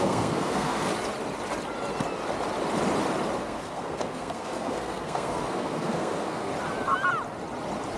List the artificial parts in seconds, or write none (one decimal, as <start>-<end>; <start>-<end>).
0.0-0.9; 3.4-6.5